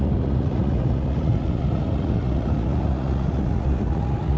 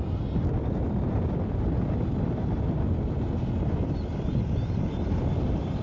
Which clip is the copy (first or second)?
first